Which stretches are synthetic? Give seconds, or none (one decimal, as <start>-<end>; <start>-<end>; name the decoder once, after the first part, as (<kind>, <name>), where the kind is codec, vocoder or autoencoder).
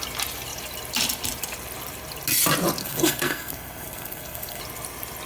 2.8-4.6 (codec, SNAC)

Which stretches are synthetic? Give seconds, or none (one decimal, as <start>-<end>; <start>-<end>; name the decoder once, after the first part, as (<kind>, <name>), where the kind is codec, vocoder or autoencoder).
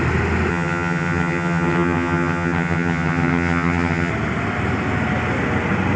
0.5-4.1 (vocoder, HiFi-GAN)